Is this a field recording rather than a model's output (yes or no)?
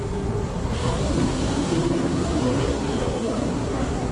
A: no